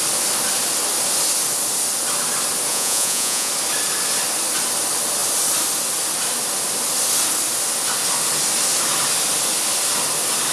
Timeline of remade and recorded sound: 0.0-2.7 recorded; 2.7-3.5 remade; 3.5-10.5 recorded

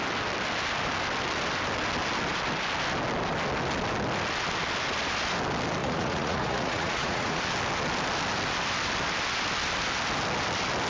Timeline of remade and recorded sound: 0.0-5.8 recorded; 5.8-7.4 remade; 7.4-10.9 recorded

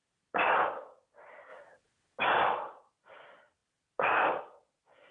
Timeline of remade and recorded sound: 0.0-5.1 recorded

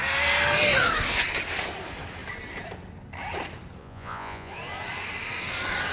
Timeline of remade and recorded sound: 0.0-3.8 recorded; 3.8-4.5 remade; 4.5-5.9 recorded

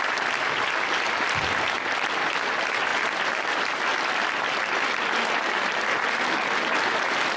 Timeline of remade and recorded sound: 0.0-7.4 recorded